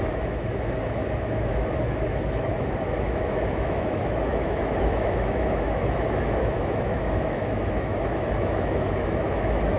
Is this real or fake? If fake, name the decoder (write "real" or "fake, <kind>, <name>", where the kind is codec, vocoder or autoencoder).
fake, autoencoder, DAC-VAE